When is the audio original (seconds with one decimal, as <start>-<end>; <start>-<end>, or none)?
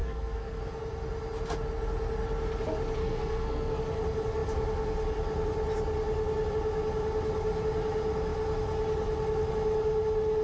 0.6-3.0; 3.8-10.4